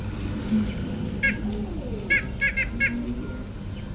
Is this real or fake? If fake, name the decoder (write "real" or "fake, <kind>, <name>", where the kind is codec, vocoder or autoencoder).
real